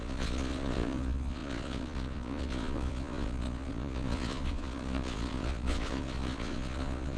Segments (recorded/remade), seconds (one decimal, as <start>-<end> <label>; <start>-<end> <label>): 0.0-7.2 remade